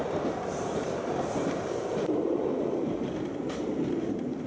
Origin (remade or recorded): remade